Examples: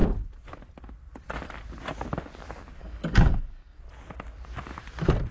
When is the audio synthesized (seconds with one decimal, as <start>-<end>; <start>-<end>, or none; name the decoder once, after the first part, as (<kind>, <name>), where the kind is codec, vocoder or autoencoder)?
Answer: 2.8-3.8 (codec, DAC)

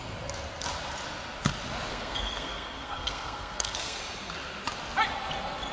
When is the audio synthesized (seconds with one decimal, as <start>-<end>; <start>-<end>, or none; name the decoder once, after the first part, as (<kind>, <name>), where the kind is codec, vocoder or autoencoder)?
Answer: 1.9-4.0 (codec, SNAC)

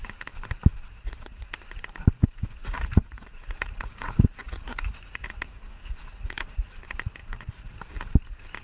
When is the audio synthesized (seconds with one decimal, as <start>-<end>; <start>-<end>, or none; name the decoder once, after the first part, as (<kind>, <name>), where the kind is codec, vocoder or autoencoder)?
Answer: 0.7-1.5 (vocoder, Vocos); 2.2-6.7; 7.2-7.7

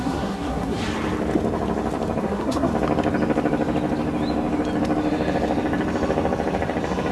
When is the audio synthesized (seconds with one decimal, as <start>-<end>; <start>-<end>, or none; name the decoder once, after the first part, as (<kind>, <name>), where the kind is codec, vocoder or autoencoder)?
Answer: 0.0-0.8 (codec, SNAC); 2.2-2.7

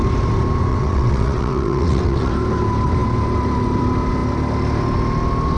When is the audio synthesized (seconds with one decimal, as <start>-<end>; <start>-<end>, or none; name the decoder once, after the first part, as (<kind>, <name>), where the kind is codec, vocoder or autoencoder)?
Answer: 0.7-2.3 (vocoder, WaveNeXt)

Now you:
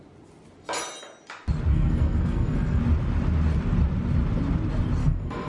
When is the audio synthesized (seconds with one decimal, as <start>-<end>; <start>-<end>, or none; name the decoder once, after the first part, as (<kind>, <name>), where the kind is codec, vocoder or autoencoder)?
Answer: 1.7-2.8 (codec, SNAC); 5.0-5.5